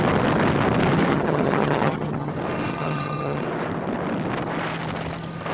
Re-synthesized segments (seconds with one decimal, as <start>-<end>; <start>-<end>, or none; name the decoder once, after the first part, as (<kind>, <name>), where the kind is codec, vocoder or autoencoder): 1.1-2.3 (vocoder, HiFi-GAN); 2.7-3.4